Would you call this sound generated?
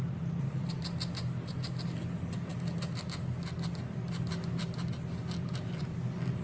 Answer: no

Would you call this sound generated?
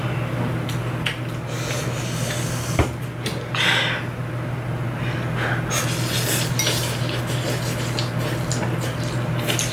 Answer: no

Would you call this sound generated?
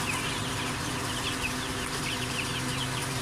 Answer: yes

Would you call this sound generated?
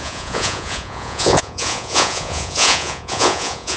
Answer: yes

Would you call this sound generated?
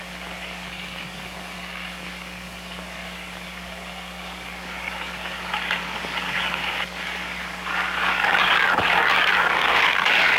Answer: yes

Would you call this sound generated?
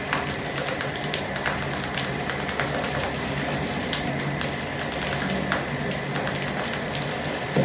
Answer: no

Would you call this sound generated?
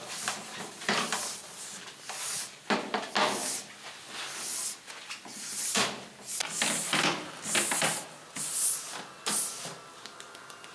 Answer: no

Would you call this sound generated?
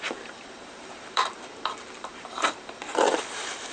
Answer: yes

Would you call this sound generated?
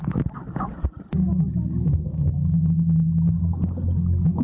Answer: no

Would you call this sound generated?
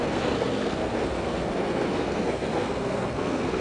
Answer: yes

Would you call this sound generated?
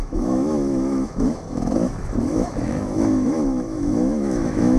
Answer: yes